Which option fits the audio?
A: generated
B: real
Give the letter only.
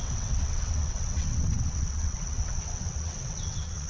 A